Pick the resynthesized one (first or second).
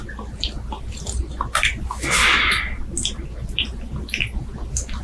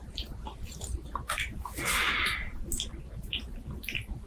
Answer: second